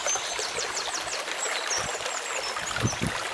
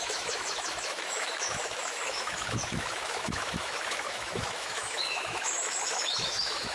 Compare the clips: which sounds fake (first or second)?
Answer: second